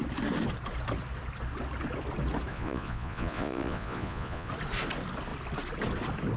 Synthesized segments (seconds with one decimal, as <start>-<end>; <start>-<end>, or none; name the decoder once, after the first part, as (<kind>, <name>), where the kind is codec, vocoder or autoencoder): 2.5-4.5 (vocoder, Vocos)